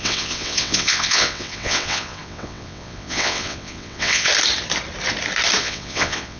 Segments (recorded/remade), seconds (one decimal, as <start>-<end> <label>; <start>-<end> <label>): 0.0-4.3 remade; 4.3-5.6 recorded; 5.6-6.4 remade